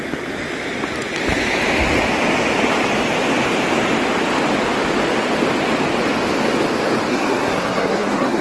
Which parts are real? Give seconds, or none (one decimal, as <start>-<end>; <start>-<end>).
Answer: 0.0-7.1